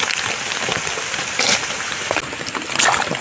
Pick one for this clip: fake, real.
real